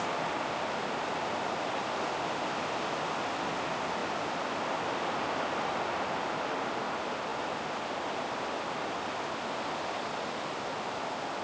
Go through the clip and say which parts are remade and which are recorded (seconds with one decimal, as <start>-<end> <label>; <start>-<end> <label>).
0.0-11.4 recorded